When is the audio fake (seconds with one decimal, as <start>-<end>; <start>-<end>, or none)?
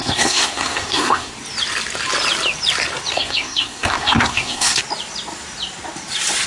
0.0-1.3; 3.1-4.8